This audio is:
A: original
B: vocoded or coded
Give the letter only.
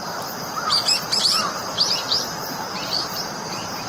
B